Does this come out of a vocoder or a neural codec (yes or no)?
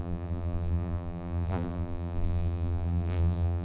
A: yes